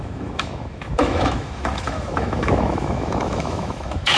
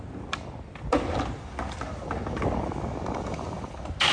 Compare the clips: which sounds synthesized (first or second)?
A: first